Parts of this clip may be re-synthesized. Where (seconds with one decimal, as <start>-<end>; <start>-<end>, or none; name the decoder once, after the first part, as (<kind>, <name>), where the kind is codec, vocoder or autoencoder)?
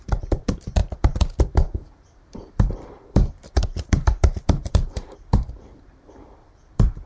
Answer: 0.0-7.1 (vocoder, BigVGAN v2)